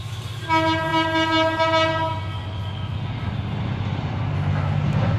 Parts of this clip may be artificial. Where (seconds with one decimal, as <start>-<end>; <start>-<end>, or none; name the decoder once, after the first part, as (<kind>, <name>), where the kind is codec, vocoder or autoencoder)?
none